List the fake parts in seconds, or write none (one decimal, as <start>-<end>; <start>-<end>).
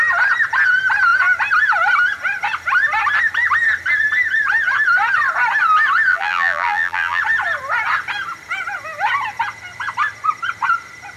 6.1-7.2